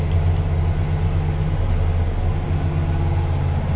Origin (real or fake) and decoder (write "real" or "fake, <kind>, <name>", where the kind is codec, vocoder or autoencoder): real